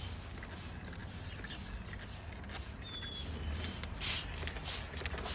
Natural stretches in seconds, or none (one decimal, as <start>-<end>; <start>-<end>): 0.0-5.3

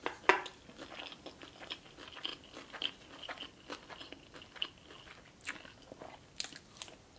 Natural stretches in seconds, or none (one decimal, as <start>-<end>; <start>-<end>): 0.0-7.2

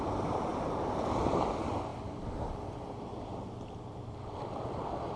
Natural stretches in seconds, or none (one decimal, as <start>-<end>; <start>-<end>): 0.0-5.2

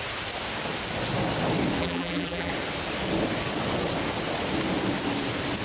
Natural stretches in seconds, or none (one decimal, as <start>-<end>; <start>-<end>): 0.0-1.8; 2.5-5.6